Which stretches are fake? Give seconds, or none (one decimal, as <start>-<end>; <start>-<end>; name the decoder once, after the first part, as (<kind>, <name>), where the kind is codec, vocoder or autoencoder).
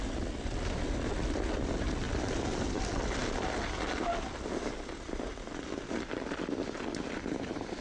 none